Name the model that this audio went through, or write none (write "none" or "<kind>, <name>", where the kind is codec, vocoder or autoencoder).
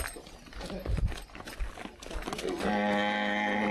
none